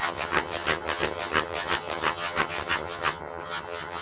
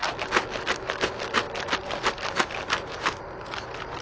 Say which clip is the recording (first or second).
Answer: second